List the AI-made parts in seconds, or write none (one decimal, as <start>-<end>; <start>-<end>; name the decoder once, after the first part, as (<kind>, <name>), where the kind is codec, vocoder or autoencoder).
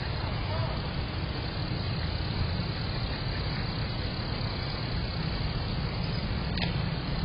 none